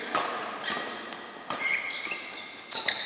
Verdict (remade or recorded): recorded